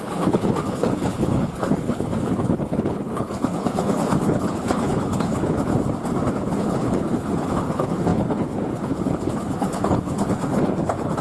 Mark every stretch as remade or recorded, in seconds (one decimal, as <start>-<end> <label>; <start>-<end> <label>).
0.0-5.7 remade; 5.7-6.3 recorded; 6.3-11.2 remade